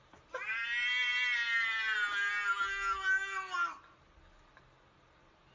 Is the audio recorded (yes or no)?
yes